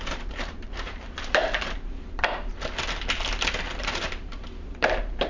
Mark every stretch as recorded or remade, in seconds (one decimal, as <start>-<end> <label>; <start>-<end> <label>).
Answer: 0.0-2.5 remade; 2.5-3.8 recorded; 3.8-5.3 remade